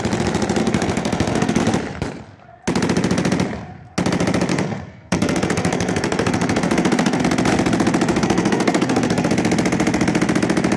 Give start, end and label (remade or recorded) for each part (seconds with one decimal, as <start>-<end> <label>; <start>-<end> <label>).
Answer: 0.0-0.6 recorded; 0.6-1.6 remade; 1.6-4.5 recorded; 4.5-7.2 remade; 7.2-8.1 recorded; 8.1-9.3 remade; 9.3-10.8 recorded